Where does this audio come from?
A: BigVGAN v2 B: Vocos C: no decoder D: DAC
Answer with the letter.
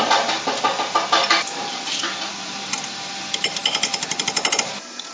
A